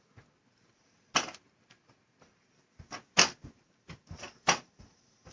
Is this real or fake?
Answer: real